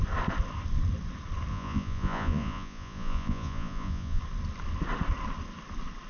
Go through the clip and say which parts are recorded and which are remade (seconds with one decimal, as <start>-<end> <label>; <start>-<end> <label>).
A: 0.0-1.5 recorded; 1.5-4.2 remade; 4.2-6.1 recorded

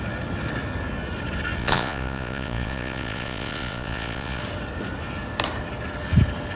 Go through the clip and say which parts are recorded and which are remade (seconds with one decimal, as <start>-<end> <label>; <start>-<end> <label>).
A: 0.0-1.6 recorded; 1.6-4.4 remade; 4.4-6.6 recorded

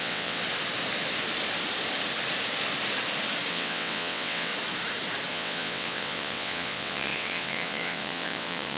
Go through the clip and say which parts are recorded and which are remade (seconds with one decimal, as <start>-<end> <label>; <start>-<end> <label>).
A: 0.0-0.4 remade; 0.4-3.5 recorded; 3.5-4.5 remade; 4.5-5.3 recorded; 5.3-8.8 remade

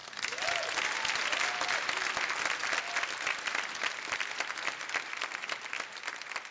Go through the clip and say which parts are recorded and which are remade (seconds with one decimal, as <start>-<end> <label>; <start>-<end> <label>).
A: 0.0-6.5 recorded

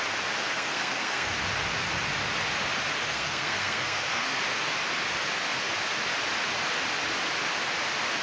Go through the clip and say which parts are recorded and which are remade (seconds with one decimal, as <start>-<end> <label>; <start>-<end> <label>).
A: 0.0-0.5 recorded; 0.5-1.3 remade; 1.3-3.0 recorded; 3.0-4.4 remade; 4.4-8.2 recorded